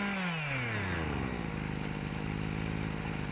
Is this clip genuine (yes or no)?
yes